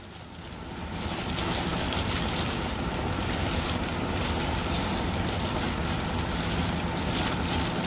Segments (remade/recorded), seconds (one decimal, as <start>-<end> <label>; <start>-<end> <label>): 0.0-7.9 recorded